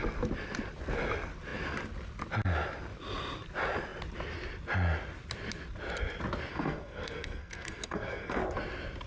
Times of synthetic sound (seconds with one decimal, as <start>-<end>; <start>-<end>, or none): 6.5-8.4